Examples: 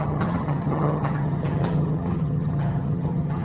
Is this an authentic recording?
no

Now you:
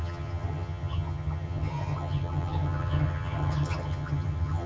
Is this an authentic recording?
no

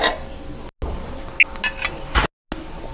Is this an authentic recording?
yes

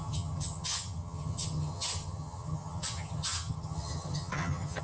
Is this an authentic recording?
no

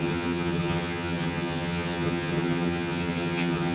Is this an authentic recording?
no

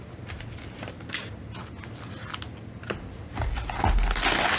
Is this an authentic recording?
yes